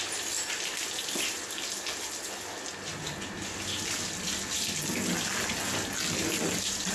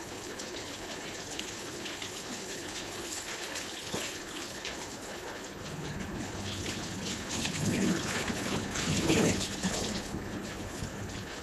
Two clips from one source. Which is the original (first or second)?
first